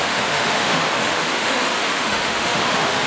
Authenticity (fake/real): fake